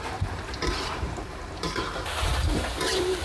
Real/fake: fake